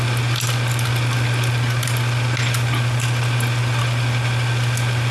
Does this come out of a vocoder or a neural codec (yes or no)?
no